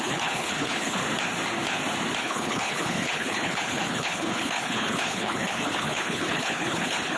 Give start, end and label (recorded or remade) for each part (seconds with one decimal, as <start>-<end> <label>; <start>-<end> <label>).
0.0-1.0 remade; 1.0-2.2 recorded; 2.2-7.2 remade